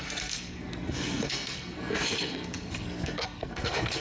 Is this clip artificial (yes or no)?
yes